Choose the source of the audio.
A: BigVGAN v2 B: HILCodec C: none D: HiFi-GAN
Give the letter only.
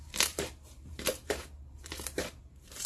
A